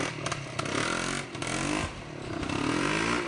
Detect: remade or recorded recorded